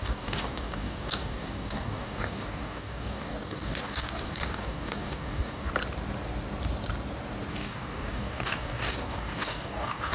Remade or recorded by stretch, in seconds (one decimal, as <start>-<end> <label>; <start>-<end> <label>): 0.0-5.7 remade; 5.7-7.5 recorded; 7.5-10.1 remade